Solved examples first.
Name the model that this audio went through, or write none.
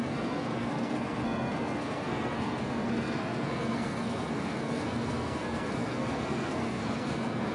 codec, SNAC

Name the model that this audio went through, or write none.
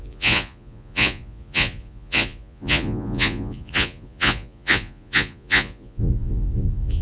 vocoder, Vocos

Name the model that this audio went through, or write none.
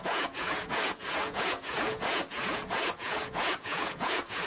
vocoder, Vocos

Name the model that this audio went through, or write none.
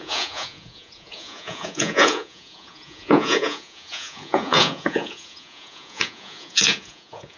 vocoder, Vocos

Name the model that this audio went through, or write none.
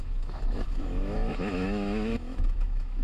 autoencoder, DAC-VAE